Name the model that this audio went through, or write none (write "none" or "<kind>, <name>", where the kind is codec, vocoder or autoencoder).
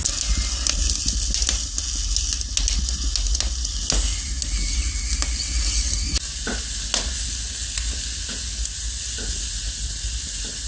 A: none